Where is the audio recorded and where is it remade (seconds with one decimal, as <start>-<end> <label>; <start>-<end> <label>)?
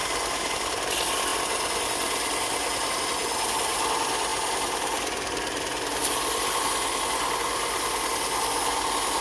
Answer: 0.0-9.2 recorded